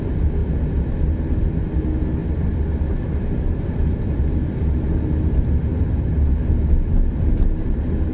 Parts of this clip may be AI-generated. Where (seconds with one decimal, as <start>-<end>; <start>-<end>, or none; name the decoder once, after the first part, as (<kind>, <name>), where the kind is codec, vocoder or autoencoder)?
0.4-1.8 (vocoder, BigVGAN v2); 2.2-4.6; 5.7-8.1